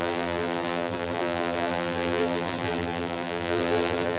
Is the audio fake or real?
fake